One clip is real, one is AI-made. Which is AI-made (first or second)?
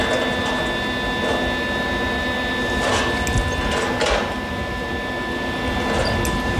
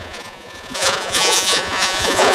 second